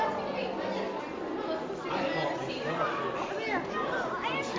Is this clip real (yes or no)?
yes